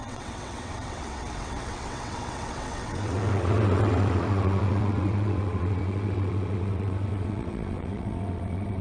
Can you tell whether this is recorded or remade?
remade